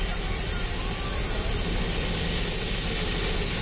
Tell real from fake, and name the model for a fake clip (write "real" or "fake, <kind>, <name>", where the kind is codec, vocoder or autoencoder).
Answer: real